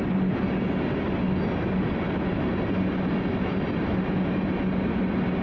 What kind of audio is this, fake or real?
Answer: real